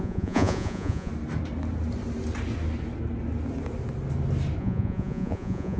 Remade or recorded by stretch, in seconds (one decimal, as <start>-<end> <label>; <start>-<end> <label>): 0.0-1.1 remade; 1.1-4.6 recorded; 4.6-5.8 remade